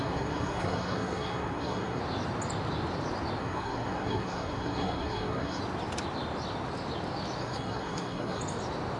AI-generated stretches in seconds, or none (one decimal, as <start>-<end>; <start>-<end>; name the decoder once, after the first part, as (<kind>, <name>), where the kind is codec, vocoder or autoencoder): 0.0-2.0 (codec, SNAC); 3.4-5.6; 7.4-8.4